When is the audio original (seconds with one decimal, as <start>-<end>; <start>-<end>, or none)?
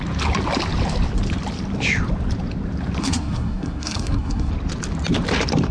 0.0-3.0; 4.5-5.7